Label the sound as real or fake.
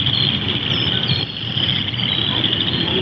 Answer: real